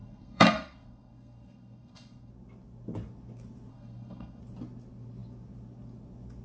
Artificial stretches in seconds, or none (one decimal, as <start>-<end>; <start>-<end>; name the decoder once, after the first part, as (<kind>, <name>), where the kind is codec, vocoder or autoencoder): 0.0-2.3 (codec, SNAC); 3.7-4.4